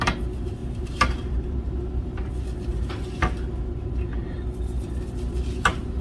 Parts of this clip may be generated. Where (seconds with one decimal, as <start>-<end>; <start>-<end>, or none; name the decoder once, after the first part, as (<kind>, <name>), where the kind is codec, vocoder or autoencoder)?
0.6-2.3 (vocoder, BigVGAN v2); 2.7-3.7